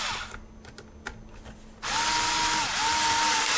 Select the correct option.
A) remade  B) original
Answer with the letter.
B